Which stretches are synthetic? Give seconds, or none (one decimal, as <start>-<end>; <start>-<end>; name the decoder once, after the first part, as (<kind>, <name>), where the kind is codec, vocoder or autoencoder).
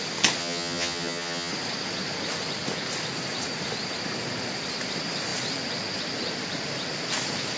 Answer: 0.4-1.5 (vocoder, HiFi-GAN)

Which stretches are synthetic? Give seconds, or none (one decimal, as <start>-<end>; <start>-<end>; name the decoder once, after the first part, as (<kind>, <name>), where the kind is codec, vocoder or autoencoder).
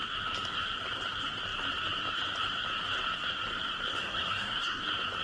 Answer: 4.0-4.8 (codec, SNAC)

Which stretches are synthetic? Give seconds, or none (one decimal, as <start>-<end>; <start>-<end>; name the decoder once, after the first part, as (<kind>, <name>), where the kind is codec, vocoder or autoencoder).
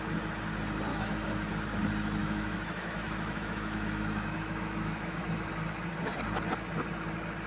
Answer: 0.9-1.5 (autoencoder, DAC-VAE); 2.2-5.5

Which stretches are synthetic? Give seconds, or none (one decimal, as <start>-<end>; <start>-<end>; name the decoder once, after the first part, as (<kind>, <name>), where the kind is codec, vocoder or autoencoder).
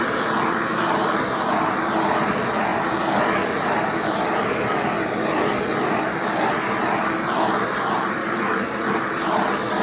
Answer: none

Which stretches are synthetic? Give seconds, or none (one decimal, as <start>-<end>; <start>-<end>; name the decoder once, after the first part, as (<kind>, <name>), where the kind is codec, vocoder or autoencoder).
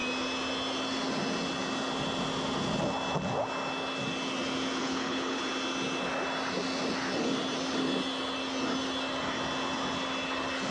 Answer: 4.8-5.4 (codec, HILCodec)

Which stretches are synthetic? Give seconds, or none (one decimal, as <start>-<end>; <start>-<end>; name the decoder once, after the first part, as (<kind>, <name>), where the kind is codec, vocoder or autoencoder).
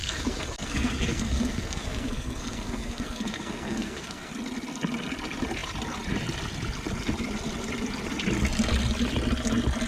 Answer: 0.0-4.3 (codec, SNAC)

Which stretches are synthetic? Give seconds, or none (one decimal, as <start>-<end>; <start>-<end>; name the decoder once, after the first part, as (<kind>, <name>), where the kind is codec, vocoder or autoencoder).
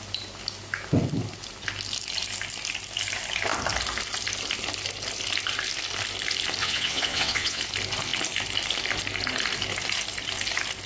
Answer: 6.6-7.6 (vocoder, WaveNeXt)